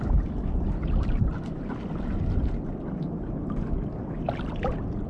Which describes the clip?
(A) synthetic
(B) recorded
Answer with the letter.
B